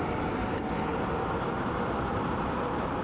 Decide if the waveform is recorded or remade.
recorded